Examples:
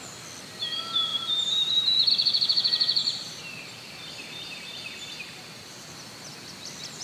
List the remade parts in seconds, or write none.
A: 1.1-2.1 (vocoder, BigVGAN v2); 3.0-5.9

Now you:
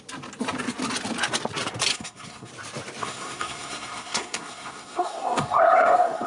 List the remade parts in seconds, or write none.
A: 1.9-2.5 (codec, SNAC); 3.0-6.3

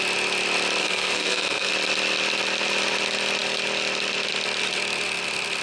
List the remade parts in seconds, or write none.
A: 0.8-1.7 (codec, SNAC)

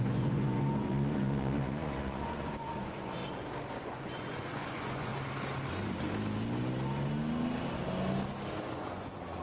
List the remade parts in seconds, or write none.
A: 0.0-3.2 (vocoder, Vocos); 3.8-5.1; 8.6-9.4